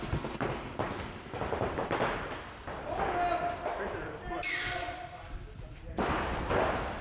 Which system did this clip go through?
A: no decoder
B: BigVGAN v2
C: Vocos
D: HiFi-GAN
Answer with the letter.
A